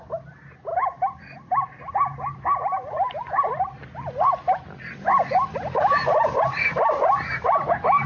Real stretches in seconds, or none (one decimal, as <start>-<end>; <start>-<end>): 0.0-8.1